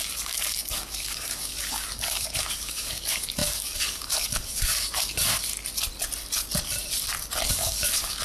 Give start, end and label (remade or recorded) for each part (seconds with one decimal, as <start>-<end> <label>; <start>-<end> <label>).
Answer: 0.0-5.5 remade; 5.5-7.5 recorded; 7.5-8.2 remade